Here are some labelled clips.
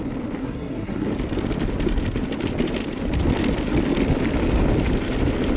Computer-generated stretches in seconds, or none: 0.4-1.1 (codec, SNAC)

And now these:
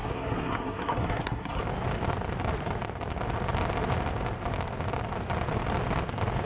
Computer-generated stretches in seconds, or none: 0.0-1.6 (codec, SNAC)

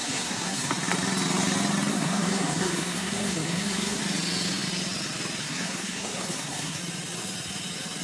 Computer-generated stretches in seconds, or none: 0.0-0.7 (codec, SNAC); 1.9-4.0; 5.4-6.8

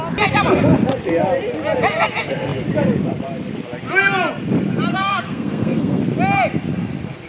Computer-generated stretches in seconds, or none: 4.9-6.0 (codec, SNAC)

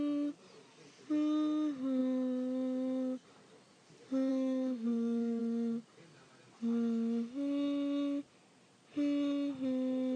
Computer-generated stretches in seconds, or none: 4.3-5.4 (codec, SNAC)

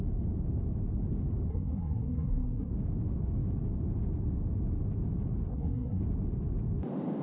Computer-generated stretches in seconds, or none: 1.5-2.7 (codec, SNAC); 5.5-6.0